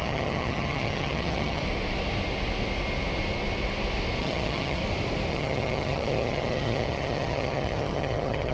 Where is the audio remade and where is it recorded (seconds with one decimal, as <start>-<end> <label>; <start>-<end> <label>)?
0.0-1.6 remade; 1.6-4.2 recorded; 4.2-4.8 remade; 4.8-5.3 recorded; 5.3-8.5 remade